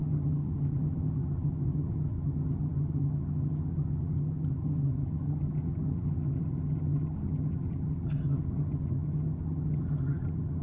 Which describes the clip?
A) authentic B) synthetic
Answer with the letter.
B